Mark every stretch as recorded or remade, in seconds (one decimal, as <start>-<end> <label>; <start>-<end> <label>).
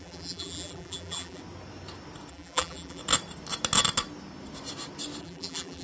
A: 0.0-1.4 remade; 1.4-2.3 recorded; 2.3-3.0 remade; 3.0-5.2 recorded; 5.2-5.8 remade